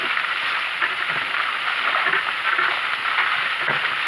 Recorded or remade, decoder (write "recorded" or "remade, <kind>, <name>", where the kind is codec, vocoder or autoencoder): recorded